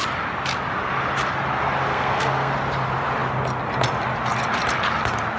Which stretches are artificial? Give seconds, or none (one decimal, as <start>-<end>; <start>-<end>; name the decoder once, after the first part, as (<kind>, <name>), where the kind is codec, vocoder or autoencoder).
1.9-2.5 (codec, SNAC)